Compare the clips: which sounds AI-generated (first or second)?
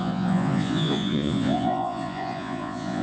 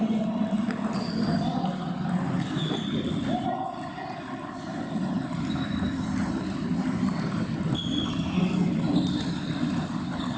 first